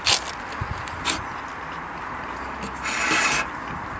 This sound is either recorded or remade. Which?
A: recorded